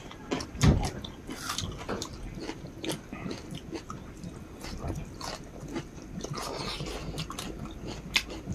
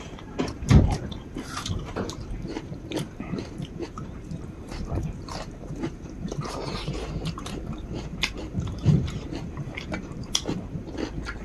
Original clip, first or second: first